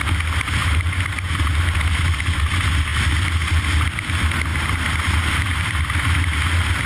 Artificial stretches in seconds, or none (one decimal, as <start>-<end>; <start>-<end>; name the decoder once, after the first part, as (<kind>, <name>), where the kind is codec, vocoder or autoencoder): 0.6-1.3 (vocoder, BigVGAN v2); 4.5-6.1